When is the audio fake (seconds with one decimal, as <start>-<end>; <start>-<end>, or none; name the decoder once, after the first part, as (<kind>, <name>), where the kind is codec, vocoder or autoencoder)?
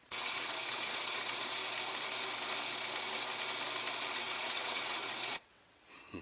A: 0.0-1.6 (vocoder, WaveNeXt); 4.1-6.2